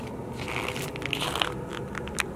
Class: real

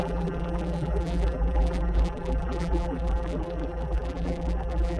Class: fake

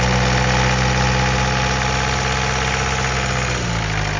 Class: real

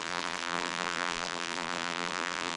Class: fake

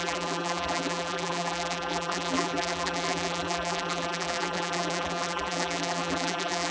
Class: fake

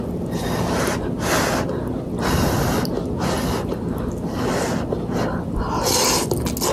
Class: real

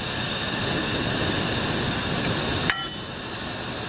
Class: real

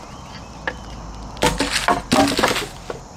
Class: real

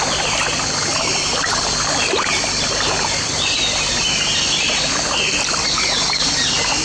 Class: real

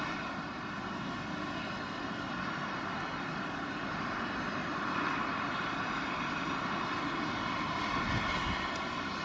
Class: real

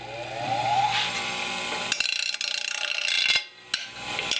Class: real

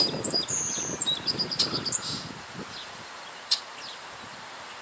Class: fake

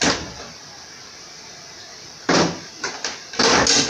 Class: real